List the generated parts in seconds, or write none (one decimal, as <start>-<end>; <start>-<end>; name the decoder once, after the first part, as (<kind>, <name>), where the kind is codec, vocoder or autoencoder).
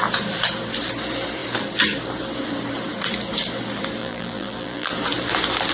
4.0-4.9 (vocoder, BigVGAN v2)